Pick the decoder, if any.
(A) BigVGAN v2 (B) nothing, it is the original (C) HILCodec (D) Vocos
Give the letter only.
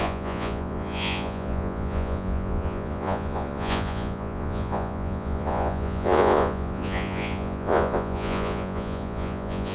D